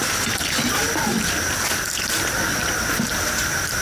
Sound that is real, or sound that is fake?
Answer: real